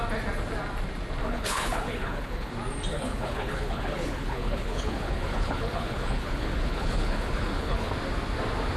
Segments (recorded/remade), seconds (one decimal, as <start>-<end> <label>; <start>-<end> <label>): 0.0-1.2 recorded; 1.2-2.5 remade; 2.5-2.9 recorded; 2.9-7.9 remade; 7.9-8.8 recorded